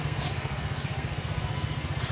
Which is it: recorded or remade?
remade